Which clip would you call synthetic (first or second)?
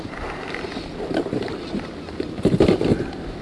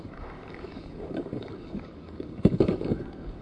second